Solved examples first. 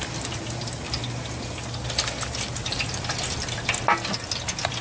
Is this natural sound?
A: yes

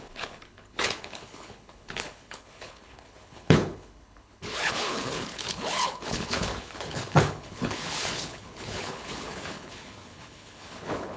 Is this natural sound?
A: no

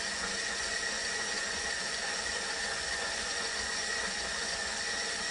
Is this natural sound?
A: no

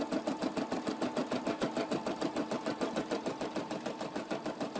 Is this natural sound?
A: yes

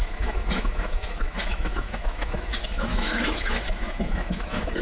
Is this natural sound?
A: no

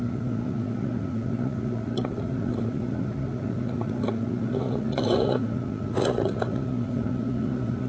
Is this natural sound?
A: no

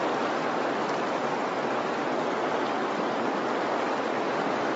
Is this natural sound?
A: yes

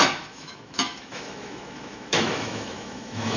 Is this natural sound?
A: no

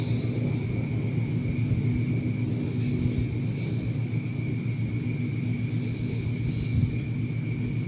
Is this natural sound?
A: yes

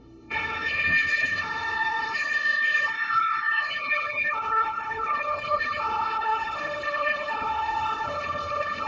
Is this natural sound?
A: no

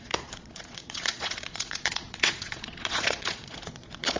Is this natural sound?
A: no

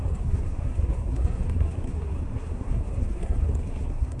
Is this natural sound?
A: no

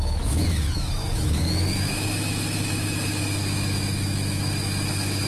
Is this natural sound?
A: no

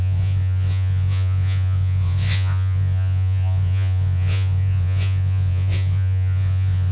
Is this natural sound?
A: no